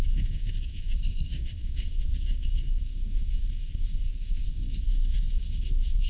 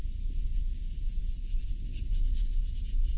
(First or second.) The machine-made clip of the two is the first